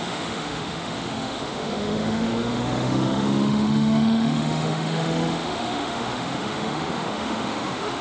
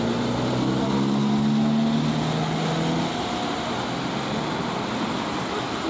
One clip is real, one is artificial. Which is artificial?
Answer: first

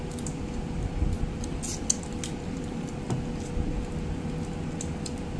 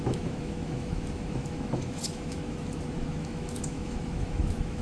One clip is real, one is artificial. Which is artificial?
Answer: second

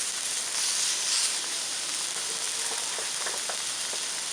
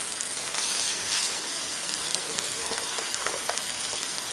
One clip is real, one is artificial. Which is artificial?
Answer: second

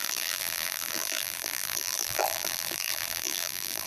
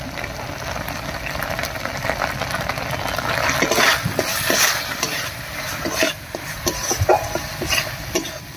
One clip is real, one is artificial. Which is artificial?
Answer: first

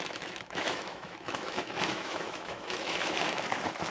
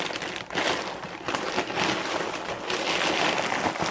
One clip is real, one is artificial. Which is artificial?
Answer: first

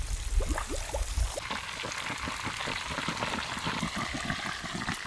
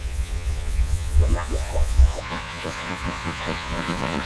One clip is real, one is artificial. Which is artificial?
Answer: second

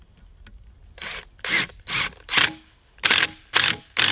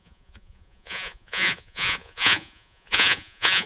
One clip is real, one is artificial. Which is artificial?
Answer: second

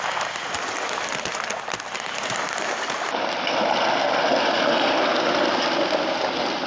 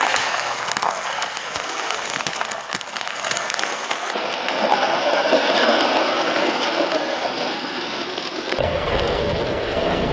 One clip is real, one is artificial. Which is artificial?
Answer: second